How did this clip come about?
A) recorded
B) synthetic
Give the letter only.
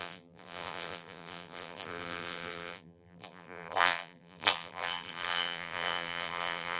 B